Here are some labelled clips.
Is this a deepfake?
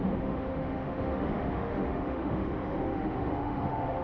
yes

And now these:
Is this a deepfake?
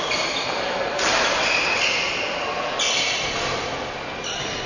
no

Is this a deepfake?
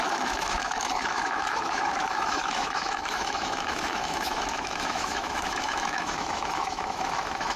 yes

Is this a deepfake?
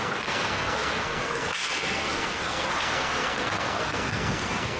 yes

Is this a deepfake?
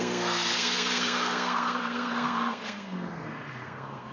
yes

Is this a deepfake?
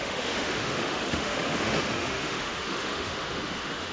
yes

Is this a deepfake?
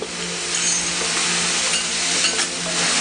no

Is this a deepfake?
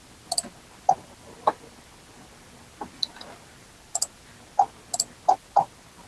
no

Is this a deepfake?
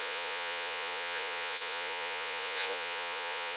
yes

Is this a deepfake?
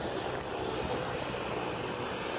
no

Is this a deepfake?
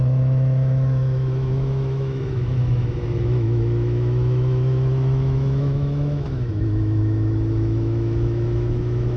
yes